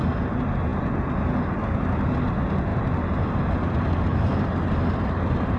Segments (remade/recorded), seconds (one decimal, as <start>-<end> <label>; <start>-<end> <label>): 0.0-5.6 recorded